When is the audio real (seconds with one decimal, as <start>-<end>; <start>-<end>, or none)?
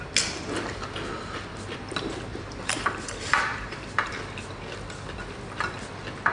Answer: 0.0-2.3; 4.1-6.3